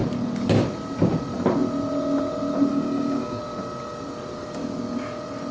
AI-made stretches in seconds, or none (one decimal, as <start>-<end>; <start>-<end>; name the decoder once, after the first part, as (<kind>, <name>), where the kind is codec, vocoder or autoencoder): 2.7-3.4 (codec, DAC)